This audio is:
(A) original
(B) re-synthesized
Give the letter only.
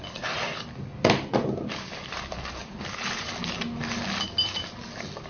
A